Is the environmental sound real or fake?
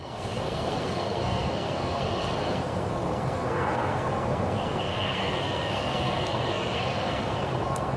fake